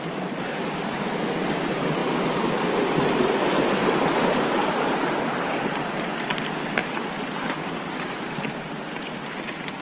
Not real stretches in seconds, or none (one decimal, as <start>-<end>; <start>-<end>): none